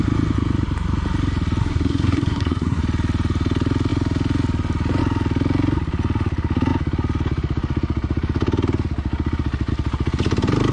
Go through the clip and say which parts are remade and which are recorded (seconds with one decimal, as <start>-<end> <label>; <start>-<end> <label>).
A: 0.0-1.6 recorded; 1.6-2.8 remade; 2.8-10.7 recorded